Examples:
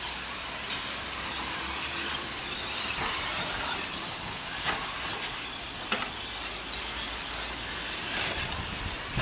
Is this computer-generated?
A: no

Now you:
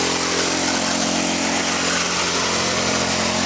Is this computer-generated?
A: no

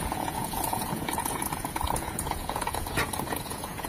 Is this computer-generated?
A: yes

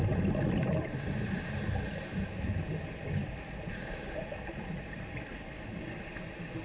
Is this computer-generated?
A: no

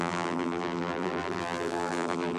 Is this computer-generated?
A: yes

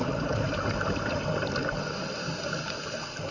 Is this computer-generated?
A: no